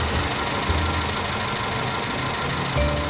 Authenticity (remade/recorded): recorded